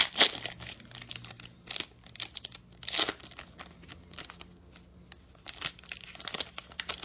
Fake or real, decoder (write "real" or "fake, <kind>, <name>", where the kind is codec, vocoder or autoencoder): real